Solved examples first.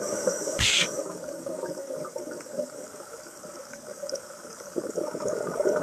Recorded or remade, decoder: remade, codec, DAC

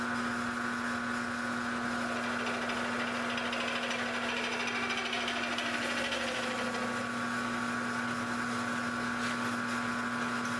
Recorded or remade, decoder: recorded